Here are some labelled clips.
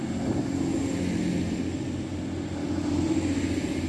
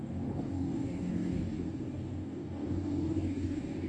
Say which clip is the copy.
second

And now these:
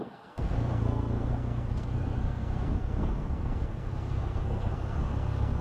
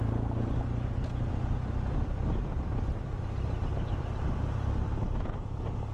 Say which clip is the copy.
first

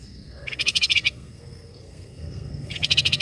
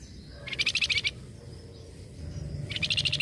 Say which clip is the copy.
first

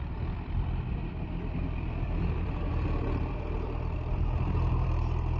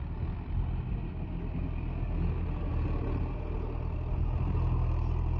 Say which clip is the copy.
first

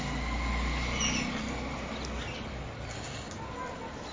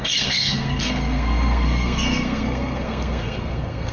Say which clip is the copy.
second